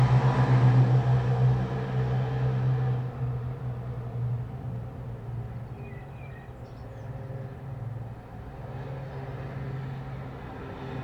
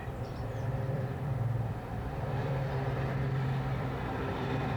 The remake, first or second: second